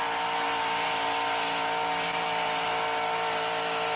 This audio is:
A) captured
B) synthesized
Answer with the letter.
A